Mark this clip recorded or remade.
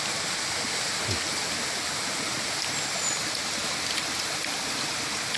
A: recorded